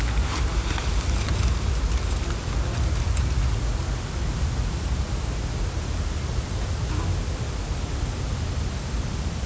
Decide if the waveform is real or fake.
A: real